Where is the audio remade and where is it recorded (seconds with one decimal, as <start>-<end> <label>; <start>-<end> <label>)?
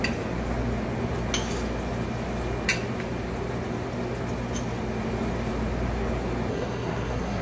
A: 0.0-6.5 recorded; 6.5-7.4 remade